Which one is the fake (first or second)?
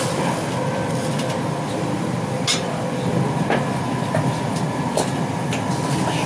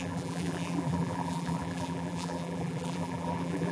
second